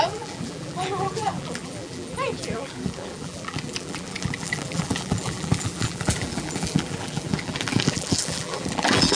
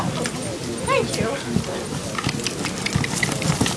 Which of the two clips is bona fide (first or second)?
second